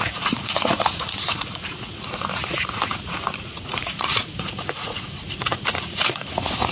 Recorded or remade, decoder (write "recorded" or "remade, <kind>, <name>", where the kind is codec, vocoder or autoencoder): remade, vocoder, Vocos